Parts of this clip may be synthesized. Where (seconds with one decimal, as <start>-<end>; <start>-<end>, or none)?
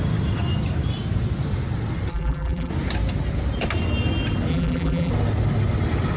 2.1-2.7; 4.5-5.1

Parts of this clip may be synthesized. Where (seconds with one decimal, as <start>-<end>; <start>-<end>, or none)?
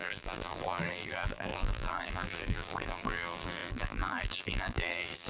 0.0-5.3